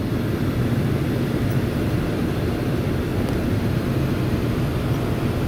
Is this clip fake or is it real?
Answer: real